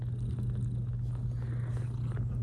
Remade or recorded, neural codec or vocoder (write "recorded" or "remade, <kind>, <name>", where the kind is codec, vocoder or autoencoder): recorded